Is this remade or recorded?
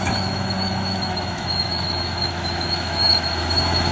remade